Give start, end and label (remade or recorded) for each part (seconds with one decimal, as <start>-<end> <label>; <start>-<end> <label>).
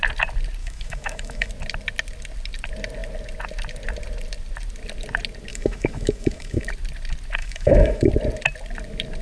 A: 0.0-0.6 recorded; 0.6-1.5 remade; 1.5-5.5 recorded; 5.5-6.7 remade; 6.7-7.4 recorded; 7.4-8.1 remade; 8.1-9.2 recorded